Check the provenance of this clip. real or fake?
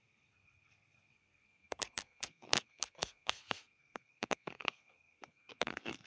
fake